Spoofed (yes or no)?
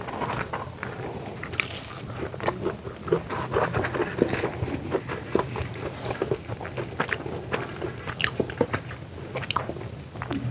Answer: no